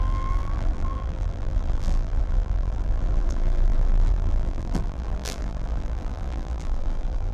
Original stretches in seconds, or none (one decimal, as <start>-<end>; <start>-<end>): none